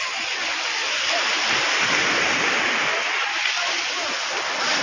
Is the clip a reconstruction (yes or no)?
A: no